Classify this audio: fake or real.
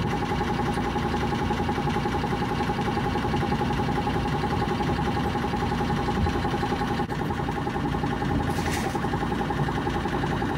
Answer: fake